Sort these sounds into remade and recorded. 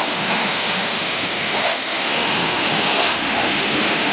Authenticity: remade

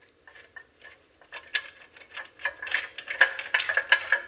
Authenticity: recorded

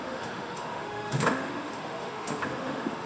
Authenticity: remade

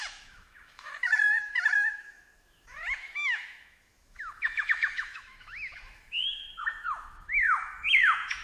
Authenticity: remade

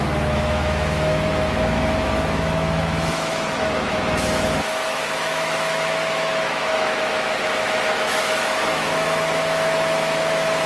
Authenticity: remade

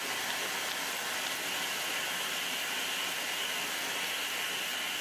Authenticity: recorded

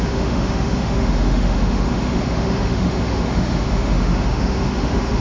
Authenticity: remade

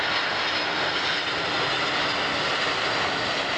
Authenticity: recorded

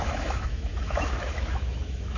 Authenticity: remade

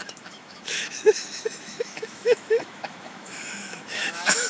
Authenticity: remade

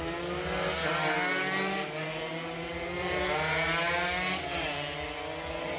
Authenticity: recorded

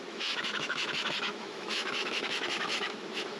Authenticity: remade